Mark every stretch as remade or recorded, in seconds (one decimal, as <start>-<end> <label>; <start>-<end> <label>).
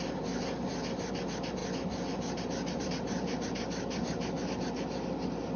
0.0-5.6 recorded